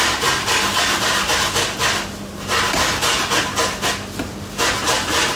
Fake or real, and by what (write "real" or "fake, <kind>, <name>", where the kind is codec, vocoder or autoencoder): real